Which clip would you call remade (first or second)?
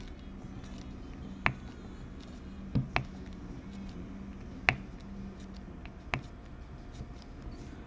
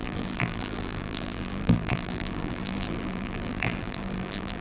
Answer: second